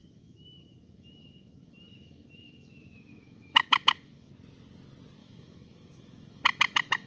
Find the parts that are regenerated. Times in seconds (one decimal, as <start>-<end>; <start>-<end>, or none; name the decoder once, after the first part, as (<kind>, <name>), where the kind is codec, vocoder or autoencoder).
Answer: 0.0-4.3 (autoencoder, DAC-VAE); 5.2-7.1